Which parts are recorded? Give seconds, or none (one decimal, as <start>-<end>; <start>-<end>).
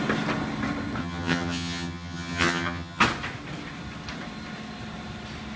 0.0-1.0; 3.0-5.6